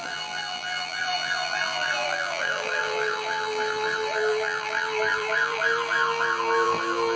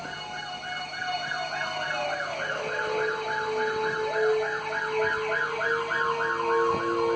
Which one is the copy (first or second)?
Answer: first